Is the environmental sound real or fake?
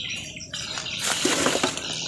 real